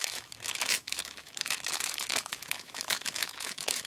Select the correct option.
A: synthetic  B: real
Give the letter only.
A